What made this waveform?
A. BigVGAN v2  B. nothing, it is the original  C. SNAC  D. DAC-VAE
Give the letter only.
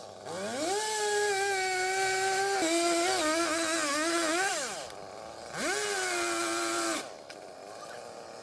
B